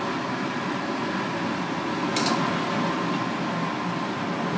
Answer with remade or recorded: recorded